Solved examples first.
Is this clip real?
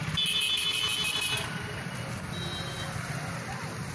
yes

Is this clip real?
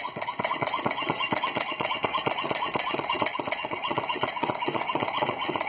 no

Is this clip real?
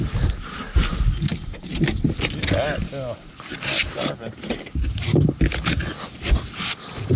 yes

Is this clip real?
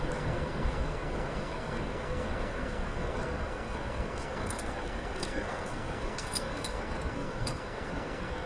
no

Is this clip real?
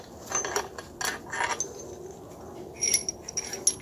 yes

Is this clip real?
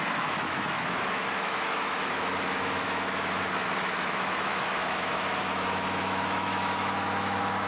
no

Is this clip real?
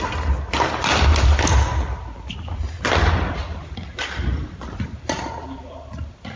yes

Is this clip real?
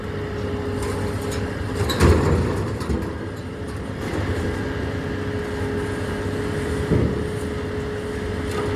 yes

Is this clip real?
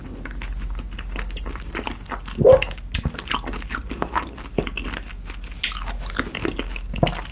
yes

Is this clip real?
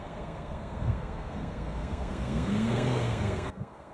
no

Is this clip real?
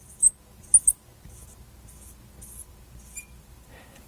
yes